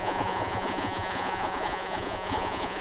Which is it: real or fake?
fake